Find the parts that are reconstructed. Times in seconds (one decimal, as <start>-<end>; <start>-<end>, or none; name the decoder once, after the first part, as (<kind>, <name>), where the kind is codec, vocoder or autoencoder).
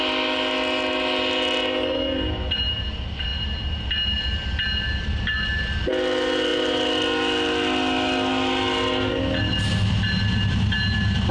none